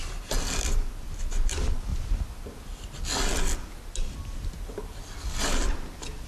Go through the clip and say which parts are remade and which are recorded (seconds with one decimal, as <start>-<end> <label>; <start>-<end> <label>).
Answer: 0.0-6.3 recorded